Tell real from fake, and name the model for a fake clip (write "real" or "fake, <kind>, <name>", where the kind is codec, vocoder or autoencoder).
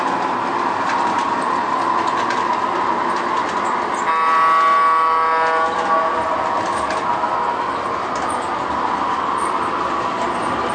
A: real